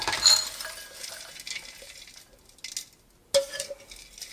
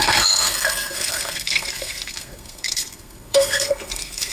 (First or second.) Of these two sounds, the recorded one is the first